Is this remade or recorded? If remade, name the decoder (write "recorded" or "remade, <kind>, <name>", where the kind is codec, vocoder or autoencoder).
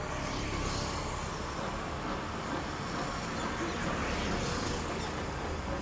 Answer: recorded